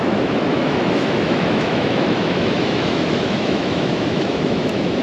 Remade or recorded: remade